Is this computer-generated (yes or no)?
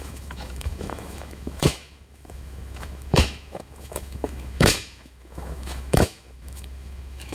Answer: yes